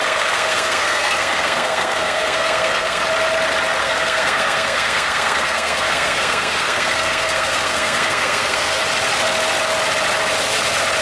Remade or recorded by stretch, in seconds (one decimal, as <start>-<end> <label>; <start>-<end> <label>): 0.0-3.0 remade; 3.0-3.8 recorded; 3.8-8.8 remade; 8.8-11.0 recorded